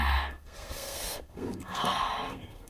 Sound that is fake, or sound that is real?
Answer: fake